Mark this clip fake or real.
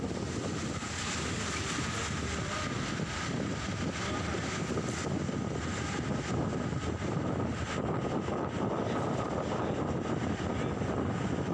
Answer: real